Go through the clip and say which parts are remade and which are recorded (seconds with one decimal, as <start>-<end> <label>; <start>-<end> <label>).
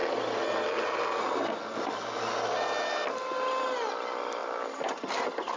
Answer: 0.0-5.6 recorded